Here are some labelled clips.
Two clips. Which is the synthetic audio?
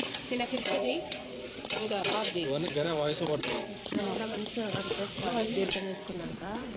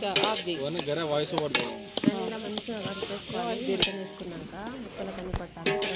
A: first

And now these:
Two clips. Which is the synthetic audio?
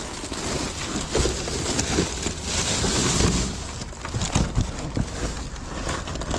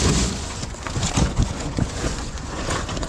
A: second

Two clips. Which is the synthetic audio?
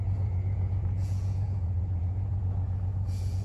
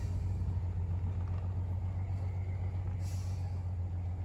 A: first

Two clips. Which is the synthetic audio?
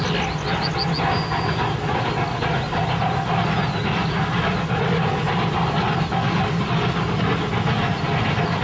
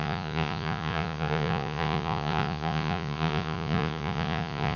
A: second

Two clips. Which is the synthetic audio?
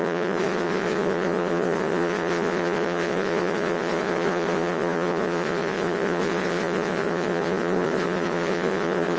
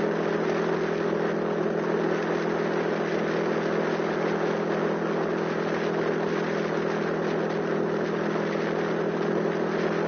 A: first